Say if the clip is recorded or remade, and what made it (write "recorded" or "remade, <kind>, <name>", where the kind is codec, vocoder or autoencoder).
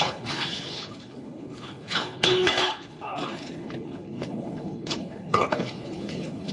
remade, codec, HILCodec